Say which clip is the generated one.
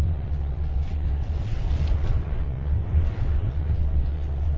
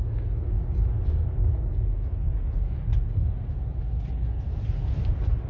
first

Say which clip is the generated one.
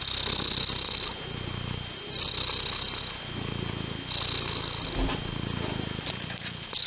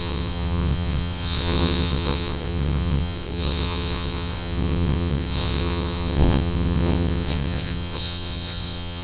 second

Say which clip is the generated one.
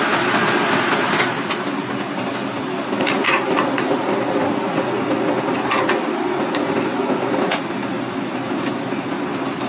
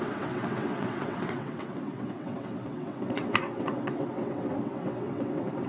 second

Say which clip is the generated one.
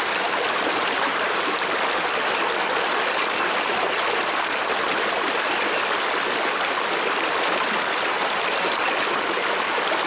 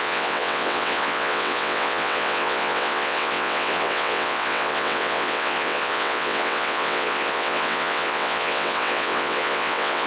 second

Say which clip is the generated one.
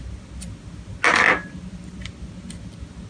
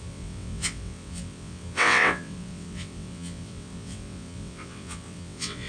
second